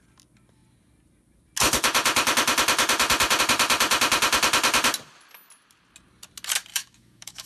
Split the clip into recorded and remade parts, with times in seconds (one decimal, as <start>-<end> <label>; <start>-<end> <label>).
0.0-6.7 recorded; 6.7-7.5 remade